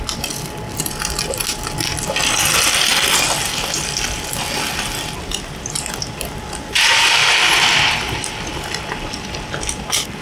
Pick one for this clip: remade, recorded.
recorded